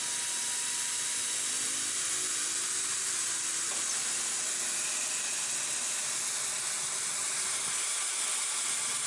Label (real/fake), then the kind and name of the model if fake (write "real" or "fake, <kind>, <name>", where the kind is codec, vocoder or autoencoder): real